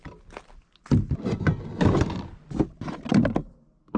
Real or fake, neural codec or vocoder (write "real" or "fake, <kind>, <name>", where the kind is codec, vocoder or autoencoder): real